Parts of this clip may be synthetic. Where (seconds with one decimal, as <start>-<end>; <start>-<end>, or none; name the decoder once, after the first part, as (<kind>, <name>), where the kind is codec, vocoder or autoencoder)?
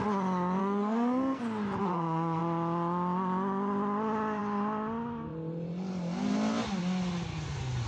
0.6-1.4 (codec, SNAC); 1.8-2.4